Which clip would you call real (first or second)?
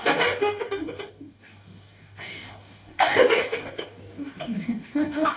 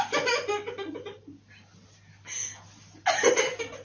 second